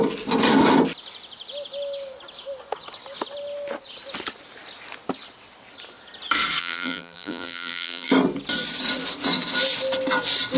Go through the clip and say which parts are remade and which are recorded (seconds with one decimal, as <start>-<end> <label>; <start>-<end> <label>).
0.0-6.6 recorded; 6.6-8.1 remade; 8.1-10.6 recorded